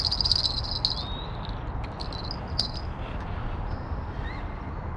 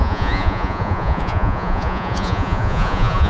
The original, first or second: first